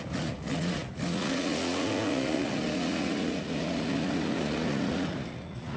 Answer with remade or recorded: remade